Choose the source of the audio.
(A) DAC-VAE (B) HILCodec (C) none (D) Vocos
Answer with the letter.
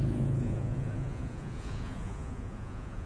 D